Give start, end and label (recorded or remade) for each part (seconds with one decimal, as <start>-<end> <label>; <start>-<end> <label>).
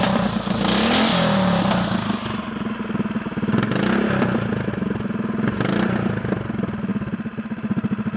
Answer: 0.0-8.2 recorded